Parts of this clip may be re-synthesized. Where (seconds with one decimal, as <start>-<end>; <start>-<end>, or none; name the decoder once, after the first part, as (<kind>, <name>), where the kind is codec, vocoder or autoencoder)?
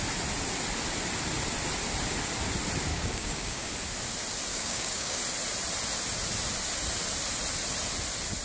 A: 2.9-3.7 (codec, DAC); 4.5-5.2